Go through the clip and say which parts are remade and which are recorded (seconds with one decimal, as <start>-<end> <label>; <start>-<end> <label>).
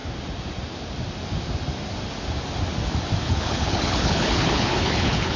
0.0-3.2 recorded; 3.2-5.4 remade